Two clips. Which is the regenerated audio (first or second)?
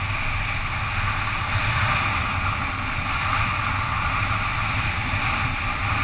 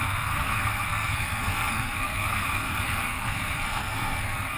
second